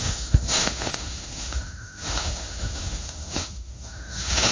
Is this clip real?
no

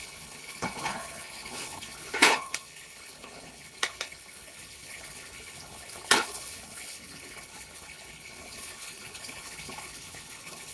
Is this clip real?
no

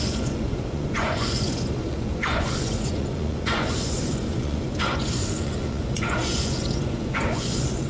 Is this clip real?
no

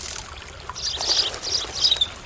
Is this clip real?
yes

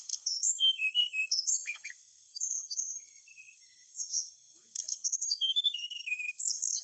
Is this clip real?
no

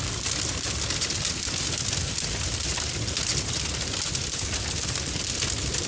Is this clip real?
yes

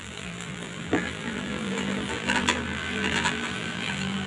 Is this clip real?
no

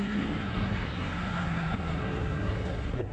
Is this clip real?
no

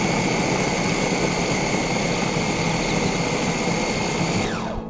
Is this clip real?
yes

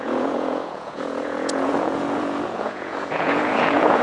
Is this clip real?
no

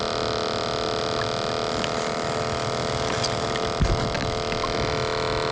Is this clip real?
yes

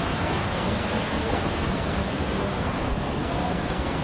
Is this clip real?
no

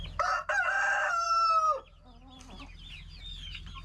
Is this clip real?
yes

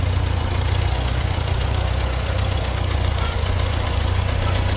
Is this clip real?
no